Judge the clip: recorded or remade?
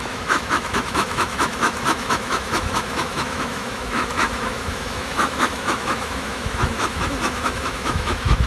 remade